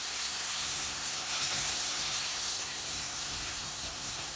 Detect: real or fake fake